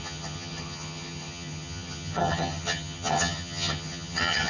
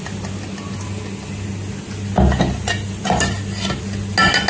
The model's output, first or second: first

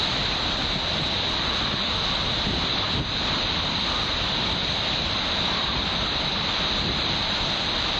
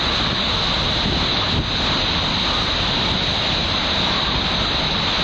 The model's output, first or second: first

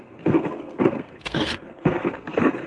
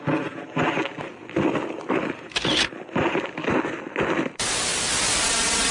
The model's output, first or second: first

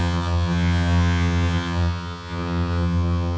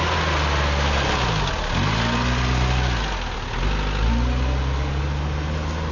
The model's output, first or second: first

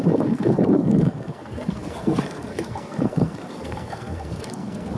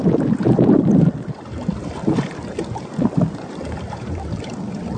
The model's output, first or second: first